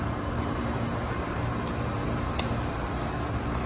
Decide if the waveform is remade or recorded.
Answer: recorded